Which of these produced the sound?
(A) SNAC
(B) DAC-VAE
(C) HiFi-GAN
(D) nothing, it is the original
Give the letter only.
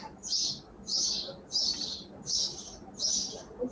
D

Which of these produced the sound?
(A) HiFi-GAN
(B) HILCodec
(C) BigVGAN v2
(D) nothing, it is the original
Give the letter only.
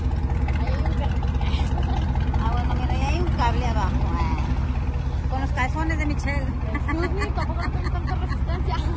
D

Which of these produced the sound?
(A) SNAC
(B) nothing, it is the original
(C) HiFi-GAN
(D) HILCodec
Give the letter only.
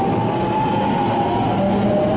B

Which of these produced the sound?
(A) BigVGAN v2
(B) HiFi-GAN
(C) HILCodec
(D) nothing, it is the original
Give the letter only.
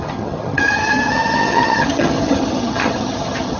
B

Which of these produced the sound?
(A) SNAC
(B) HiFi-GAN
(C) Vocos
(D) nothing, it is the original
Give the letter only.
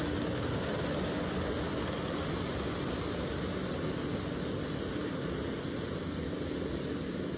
D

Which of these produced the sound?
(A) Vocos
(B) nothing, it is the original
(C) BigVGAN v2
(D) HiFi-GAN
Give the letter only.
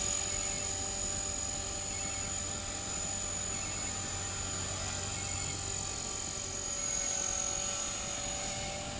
B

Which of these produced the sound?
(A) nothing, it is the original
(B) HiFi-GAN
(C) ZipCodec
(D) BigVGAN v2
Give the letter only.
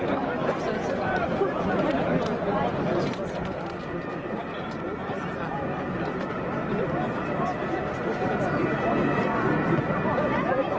A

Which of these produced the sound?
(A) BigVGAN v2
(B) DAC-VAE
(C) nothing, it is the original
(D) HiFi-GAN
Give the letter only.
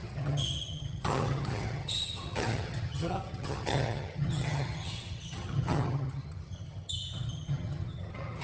D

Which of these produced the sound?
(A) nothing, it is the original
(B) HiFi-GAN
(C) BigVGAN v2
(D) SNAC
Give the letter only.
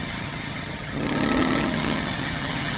B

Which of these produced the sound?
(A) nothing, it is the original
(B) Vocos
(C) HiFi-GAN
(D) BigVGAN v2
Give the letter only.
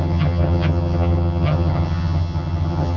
C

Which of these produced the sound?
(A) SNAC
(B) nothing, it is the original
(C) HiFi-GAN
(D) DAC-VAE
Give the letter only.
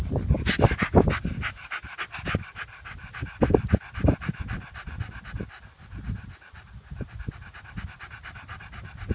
B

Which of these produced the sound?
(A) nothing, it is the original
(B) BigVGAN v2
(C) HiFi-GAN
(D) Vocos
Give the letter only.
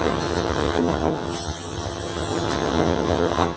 C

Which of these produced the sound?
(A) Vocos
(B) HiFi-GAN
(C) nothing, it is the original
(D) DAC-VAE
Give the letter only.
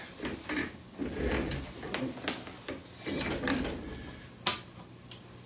C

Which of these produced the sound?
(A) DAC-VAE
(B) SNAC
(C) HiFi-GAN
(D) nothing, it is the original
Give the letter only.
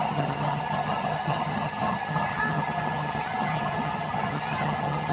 C